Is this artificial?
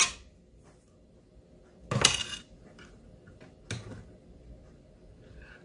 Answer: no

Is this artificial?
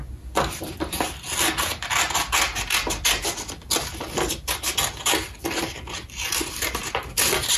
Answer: no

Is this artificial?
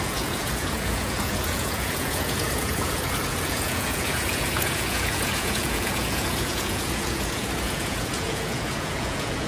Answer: yes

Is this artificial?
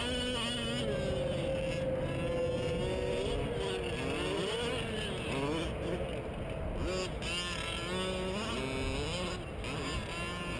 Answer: no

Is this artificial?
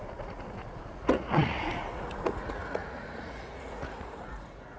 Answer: yes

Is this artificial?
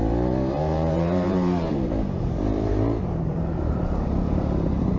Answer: yes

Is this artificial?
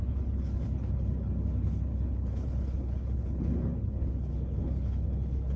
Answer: yes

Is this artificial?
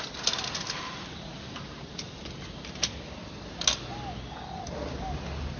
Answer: no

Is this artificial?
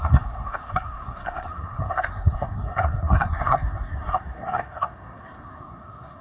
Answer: yes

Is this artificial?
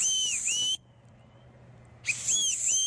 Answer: no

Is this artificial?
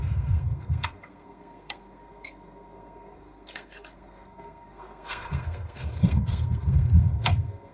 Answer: yes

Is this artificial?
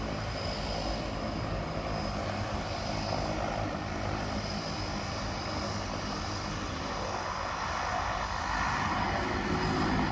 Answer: no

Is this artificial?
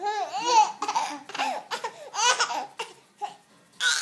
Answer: no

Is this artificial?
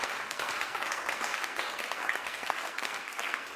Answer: yes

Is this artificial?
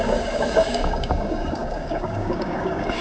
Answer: yes